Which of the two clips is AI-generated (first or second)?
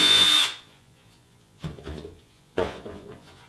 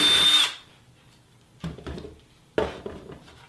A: first